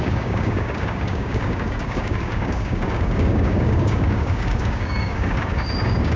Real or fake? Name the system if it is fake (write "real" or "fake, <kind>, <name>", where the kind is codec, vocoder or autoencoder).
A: fake, codec, DAC